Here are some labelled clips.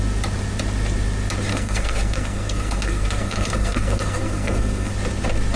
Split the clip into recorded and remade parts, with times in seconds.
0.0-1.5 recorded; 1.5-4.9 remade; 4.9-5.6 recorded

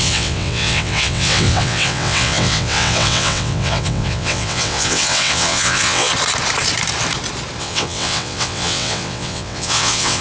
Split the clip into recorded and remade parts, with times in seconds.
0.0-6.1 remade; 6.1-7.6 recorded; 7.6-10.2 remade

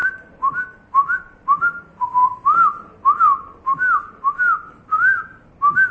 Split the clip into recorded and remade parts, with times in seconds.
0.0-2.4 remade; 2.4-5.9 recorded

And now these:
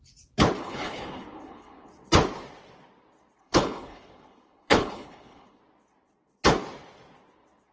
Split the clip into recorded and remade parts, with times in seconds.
0.0-0.6 recorded; 0.6-1.9 remade; 1.9-3.4 recorded; 3.4-5.6 remade; 5.6-7.7 recorded